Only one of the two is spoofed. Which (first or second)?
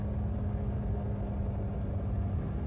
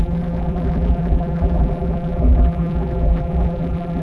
second